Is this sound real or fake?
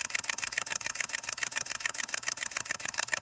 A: fake